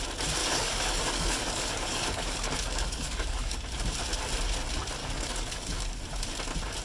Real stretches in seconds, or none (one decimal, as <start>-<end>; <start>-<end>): 0.0-0.4; 3.6-5.0; 6.0-6.8